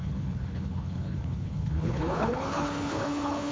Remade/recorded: remade